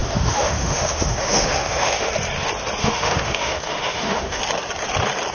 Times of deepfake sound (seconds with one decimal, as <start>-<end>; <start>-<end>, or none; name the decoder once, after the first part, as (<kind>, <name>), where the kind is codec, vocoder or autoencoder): 0.0-2.1 (autoencoder, DAC-VAE); 2.8-4.4

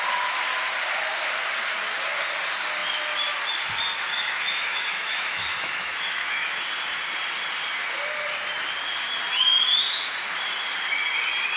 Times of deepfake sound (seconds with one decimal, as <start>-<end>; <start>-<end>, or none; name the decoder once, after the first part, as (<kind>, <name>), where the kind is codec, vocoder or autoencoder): 4.1-6.6 (autoencoder, DAC-VAE)

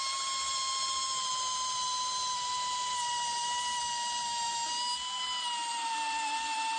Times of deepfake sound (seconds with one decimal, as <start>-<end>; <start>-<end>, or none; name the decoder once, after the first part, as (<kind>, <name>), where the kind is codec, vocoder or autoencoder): none

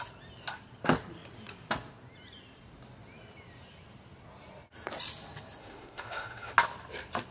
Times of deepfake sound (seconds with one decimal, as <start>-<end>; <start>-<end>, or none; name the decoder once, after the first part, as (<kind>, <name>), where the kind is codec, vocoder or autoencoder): 5.6-6.5 (autoencoder, DAC-VAE)

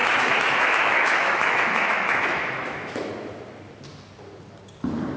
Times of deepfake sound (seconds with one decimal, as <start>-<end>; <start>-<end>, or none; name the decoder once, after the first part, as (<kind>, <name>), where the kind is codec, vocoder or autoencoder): 0.0-3.1 (autoencoder, DAC-VAE)

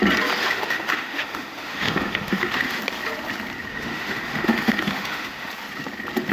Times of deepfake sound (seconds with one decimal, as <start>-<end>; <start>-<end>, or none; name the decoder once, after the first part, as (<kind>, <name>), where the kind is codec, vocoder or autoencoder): 0.4-2.8 (autoencoder, DAC-VAE); 3.7-5.5

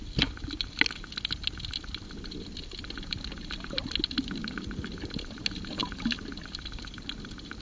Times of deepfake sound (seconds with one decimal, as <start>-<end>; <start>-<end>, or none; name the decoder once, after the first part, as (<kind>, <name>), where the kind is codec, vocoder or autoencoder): none